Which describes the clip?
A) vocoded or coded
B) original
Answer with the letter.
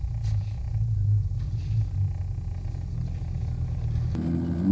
B